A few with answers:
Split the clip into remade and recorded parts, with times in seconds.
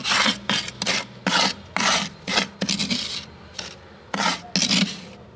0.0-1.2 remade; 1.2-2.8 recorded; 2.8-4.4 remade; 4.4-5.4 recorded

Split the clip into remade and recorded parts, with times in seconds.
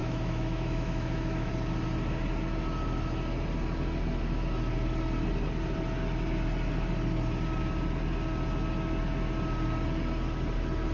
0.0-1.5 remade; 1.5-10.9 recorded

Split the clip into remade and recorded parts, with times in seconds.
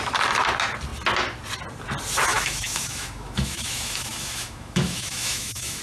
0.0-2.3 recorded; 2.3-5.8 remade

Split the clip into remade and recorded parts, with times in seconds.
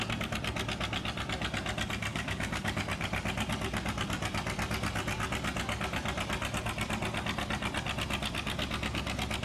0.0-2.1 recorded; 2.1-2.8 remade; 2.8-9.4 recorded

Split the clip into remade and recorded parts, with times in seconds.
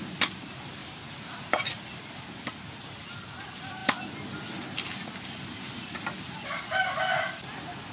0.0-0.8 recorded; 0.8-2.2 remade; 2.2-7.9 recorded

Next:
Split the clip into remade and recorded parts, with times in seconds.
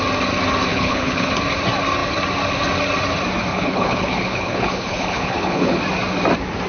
0.0-0.7 recorded; 0.7-1.3 remade; 1.3-3.5 recorded; 3.5-5.8 remade; 5.8-6.7 recorded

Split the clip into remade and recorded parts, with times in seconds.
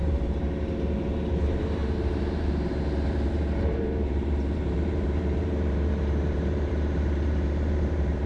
0.0-8.3 remade